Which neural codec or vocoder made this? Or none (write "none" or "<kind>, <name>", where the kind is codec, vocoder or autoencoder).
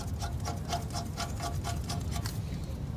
none